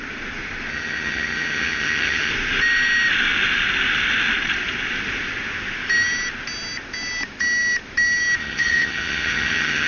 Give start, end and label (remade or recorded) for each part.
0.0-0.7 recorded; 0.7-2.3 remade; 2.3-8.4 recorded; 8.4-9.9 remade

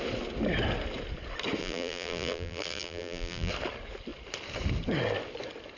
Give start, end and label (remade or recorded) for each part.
0.0-1.6 recorded; 1.6-3.5 remade; 3.5-5.8 recorded

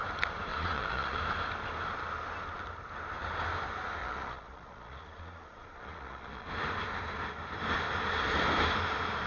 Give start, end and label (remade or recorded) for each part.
0.0-0.5 recorded; 0.5-1.2 remade; 1.2-4.0 recorded; 4.0-6.5 remade; 6.5-9.3 recorded

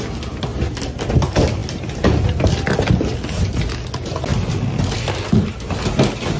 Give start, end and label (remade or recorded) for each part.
0.0-6.4 recorded

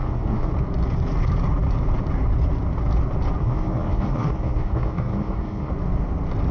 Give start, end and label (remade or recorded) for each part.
0.0-0.5 remade; 0.5-3.4 recorded; 3.4-5.7 remade; 5.7-6.5 recorded

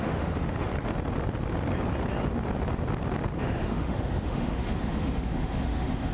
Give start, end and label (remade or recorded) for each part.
0.0-0.7 remade; 0.7-3.4 recorded; 3.4-6.1 remade

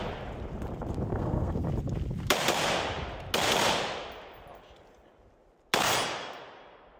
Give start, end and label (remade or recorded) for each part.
0.0-1.1 recorded; 1.1-1.7 remade; 1.7-7.0 recorded